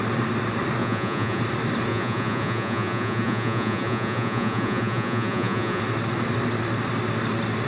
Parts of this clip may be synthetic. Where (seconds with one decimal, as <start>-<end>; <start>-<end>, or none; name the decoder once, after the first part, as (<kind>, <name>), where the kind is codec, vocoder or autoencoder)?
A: 0.8-1.4 (vocoder, Vocos); 1.9-5.8